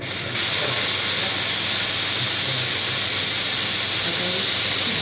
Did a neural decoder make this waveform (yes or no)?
no